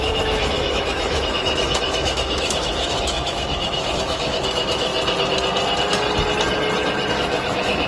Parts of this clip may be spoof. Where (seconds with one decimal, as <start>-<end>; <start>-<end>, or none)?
0.0-4.9; 7.1-7.9